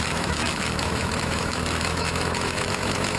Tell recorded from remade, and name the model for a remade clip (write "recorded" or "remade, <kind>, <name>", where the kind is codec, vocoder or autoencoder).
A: remade, autoencoder, DAC-VAE